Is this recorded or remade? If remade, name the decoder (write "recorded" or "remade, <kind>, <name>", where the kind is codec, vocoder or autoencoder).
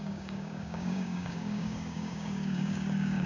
remade, codec, DAC